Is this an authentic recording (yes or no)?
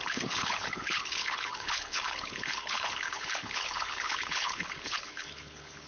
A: no